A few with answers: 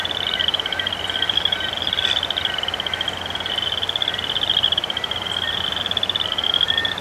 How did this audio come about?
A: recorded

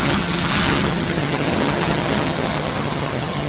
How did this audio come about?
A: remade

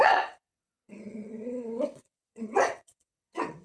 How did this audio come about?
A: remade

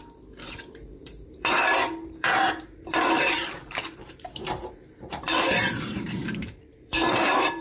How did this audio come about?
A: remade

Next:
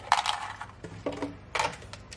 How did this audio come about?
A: recorded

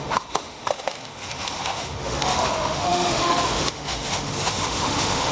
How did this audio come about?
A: remade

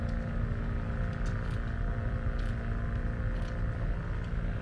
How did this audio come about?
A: recorded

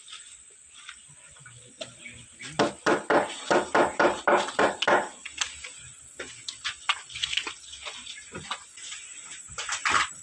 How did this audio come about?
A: recorded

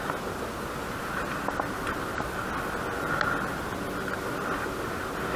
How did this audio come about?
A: recorded